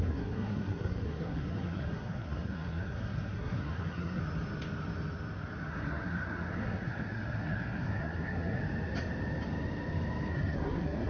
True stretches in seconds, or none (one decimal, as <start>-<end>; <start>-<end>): 4.2-5.7; 8.6-10.3